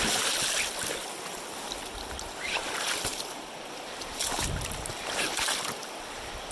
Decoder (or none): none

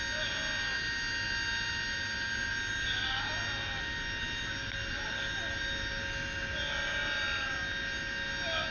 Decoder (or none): none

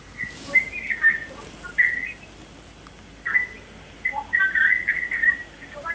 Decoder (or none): none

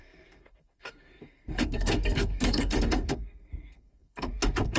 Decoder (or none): codec, SNAC